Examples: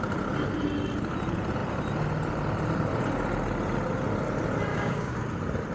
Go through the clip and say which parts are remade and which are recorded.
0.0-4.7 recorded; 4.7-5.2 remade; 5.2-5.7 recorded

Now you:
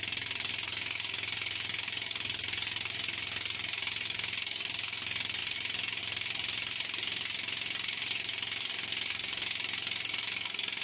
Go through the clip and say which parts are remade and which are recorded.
0.0-10.8 recorded

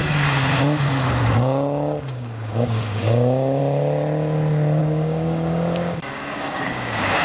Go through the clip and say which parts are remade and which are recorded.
0.0-1.2 recorded; 1.2-3.6 remade; 3.6-4.8 recorded; 4.8-7.2 remade